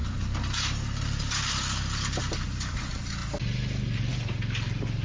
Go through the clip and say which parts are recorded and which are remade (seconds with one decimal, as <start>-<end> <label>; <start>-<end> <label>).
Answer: 0.0-5.0 recorded